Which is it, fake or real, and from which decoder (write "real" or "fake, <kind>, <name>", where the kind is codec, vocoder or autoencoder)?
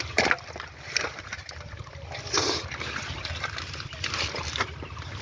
real